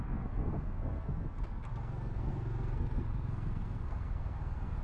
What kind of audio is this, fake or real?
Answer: fake